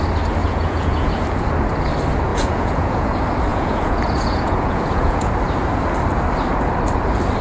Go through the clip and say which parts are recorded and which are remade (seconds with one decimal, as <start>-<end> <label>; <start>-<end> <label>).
0.0-0.4 recorded; 0.4-1.1 remade; 1.1-2.3 recorded; 2.3-3.1 remade; 3.1-3.5 recorded; 3.5-5.3 remade; 5.3-7.4 recorded